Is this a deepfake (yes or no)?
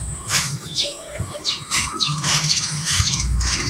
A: yes